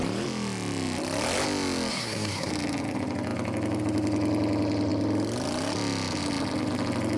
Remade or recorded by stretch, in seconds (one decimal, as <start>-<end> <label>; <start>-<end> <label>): 0.0-1.9 recorded; 1.9-2.5 remade; 2.5-7.2 recorded